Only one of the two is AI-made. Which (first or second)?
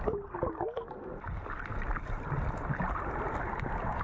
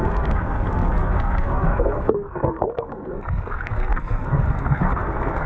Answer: second